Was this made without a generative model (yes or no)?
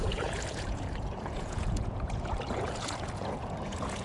no